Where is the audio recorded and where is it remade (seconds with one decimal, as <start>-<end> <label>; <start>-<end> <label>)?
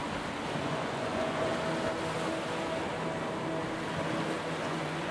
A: 0.0-0.6 recorded; 0.6-1.5 remade; 1.5-4.6 recorded; 4.6-5.1 remade